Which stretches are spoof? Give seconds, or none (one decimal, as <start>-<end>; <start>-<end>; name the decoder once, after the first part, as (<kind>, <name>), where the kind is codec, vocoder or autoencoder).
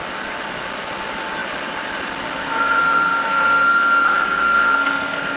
2.4-5.4 (codec, SNAC)